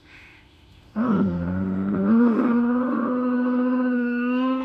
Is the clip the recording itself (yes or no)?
no